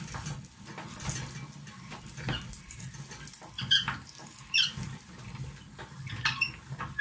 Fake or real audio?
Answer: real